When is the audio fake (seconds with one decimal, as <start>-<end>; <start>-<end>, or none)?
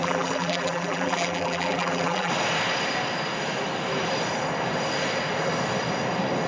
0.0-2.3